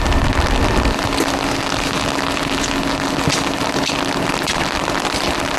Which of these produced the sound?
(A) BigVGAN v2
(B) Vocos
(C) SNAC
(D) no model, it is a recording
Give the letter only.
D